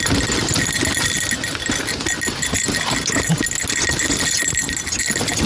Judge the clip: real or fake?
real